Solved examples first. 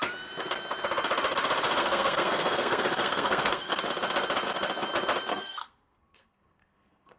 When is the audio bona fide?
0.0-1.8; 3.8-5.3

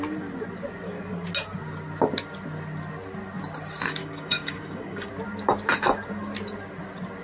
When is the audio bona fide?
0.0-4.0; 5.1-7.2

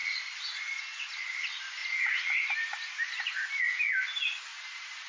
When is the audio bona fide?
0.0-1.8; 2.4-4.5

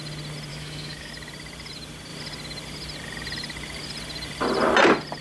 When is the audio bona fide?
0.0-0.5; 1.1-5.2

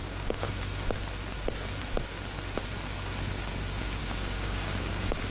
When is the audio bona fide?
0.5-4.0

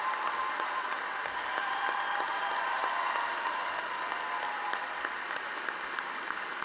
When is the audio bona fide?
2.8-5.9

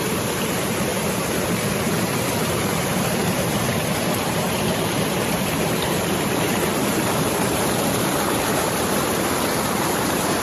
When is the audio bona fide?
none